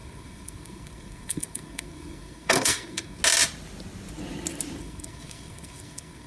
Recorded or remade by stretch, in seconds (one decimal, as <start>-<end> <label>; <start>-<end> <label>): 0.0-3.2 remade; 3.2-4.8 recorded; 4.8-6.3 remade